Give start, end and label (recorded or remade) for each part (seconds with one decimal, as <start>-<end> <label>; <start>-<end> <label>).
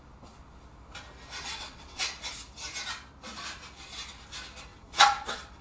0.0-1.4 recorded; 1.4-2.0 remade; 2.0-4.7 recorded; 4.7-5.6 remade